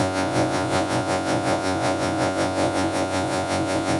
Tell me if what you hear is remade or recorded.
remade